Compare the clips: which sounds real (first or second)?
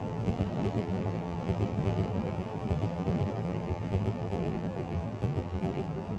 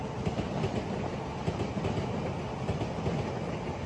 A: second